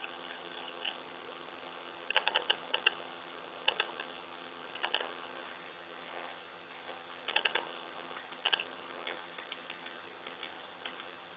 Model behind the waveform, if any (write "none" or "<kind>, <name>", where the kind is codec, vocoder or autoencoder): vocoder, HiFi-GAN